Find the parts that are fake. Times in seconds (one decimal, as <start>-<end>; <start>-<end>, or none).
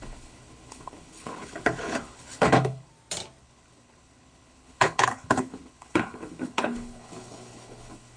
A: 0.0-2.9; 3.4-8.2